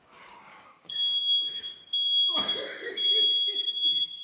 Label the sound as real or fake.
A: fake